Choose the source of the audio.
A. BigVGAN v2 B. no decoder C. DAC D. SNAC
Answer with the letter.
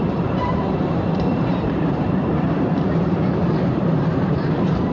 A